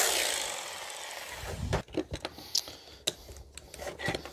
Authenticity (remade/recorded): recorded